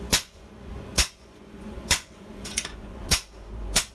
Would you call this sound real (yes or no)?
no